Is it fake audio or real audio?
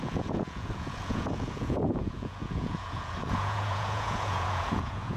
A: fake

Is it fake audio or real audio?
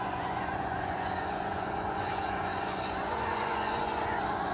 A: fake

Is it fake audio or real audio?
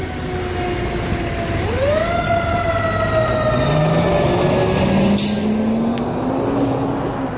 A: real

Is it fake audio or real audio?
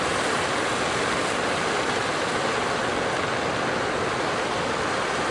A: real